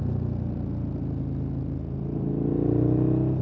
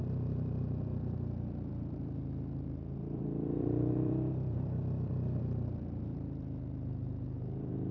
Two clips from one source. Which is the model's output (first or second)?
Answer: second